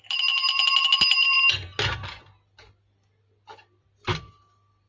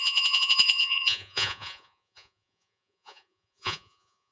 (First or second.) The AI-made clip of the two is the second